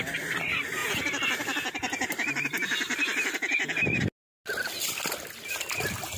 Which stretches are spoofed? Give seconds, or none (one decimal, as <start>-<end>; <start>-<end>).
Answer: 0.8-4.0